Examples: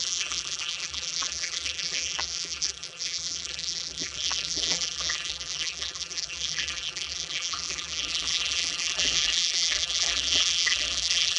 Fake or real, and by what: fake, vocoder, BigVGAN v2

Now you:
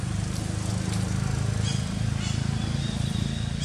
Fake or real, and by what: real